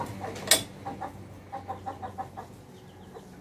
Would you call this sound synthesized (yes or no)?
no